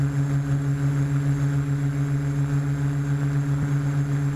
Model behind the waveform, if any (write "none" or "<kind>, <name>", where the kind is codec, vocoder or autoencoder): none